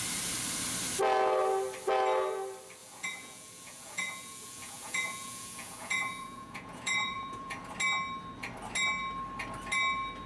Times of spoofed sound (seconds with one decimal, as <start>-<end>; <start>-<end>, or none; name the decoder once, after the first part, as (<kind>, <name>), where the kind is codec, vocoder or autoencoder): 2.8-7.7 (vocoder, Vocos)